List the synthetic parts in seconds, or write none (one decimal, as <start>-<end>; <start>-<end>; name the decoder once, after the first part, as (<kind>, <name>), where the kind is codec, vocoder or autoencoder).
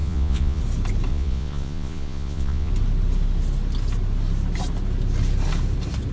0.0-0.6 (vocoder, Vocos); 1.1-2.7